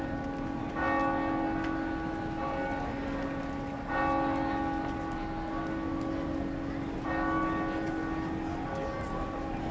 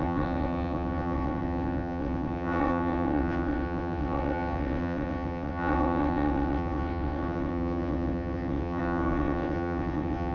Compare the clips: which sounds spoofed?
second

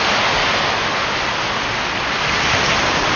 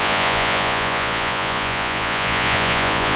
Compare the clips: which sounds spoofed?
second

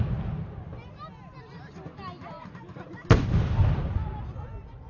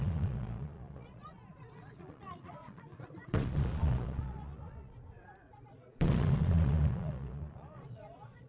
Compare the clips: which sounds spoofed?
second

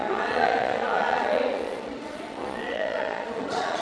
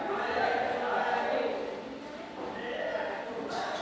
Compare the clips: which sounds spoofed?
first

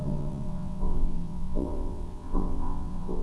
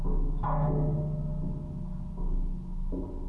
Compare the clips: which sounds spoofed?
first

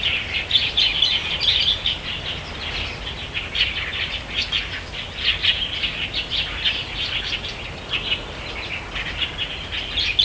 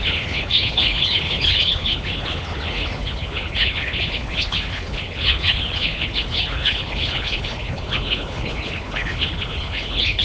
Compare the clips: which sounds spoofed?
second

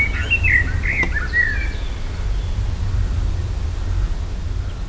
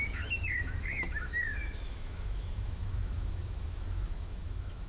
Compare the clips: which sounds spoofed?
second